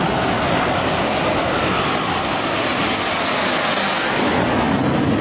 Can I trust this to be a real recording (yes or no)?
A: yes